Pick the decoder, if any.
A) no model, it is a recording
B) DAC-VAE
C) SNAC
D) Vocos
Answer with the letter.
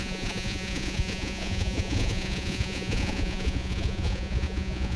D